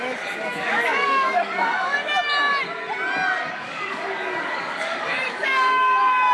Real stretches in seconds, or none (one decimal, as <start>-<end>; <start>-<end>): 2.5-3.5